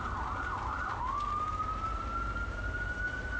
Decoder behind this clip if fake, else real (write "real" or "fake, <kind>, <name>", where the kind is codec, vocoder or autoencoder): real